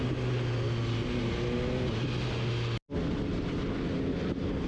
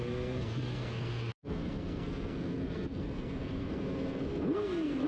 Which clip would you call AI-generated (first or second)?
second